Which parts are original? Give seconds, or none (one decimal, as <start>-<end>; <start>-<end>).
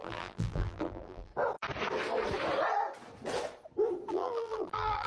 1.3-4.1